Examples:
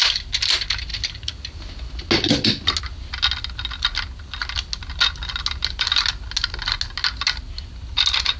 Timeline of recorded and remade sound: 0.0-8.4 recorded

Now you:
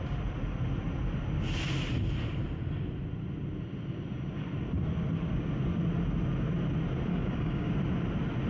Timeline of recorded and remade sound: 0.0-7.1 recorded; 7.1-7.7 remade; 7.7-8.5 recorded

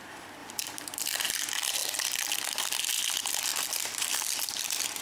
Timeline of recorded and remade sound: 0.0-0.4 recorded; 0.4-1.3 remade; 1.3-3.5 recorded; 3.5-4.5 remade; 4.5-5.0 recorded

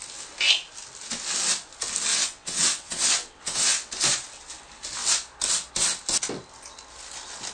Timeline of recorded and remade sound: 0.0-2.1 recorded; 2.1-3.9 remade; 3.9-7.5 recorded

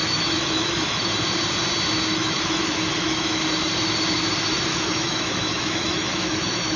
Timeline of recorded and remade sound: 0.0-1.1 remade; 1.1-2.1 recorded; 2.1-3.4 remade; 3.4-4.7 recorded; 4.7-6.8 remade

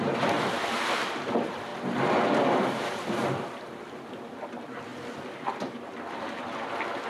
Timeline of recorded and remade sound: 0.0-4.9 remade; 4.9-7.1 recorded